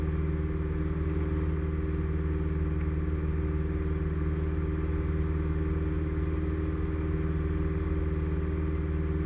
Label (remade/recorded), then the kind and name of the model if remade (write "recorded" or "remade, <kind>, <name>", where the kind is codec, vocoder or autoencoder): recorded